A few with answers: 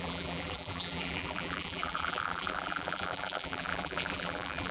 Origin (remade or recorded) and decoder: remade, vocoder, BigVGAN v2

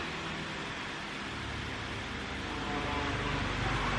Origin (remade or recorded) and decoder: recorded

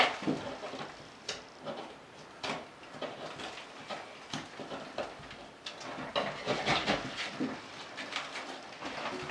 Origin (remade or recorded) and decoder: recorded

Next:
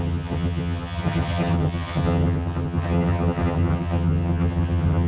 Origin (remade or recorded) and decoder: remade, vocoder, HiFi-GAN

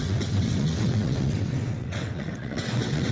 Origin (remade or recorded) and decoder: remade, vocoder, WaveNeXt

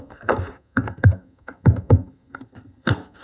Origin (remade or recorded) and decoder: remade, codec, SNAC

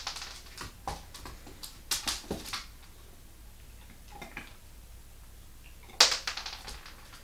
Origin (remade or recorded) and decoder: recorded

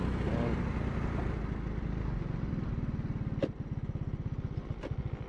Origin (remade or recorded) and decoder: recorded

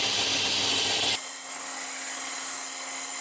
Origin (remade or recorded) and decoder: recorded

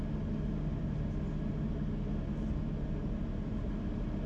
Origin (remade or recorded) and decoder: recorded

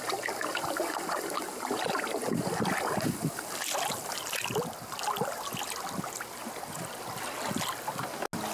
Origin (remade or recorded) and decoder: recorded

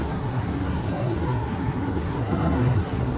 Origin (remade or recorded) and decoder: remade, codec, SNAC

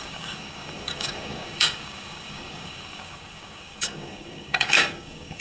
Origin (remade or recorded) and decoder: remade, codec, DAC